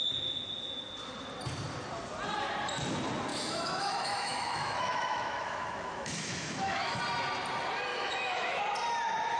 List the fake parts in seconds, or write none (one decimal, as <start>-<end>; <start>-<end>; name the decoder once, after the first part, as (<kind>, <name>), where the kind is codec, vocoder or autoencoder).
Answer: 3.3-7.0 (autoencoder, DAC-VAE); 7.9-8.6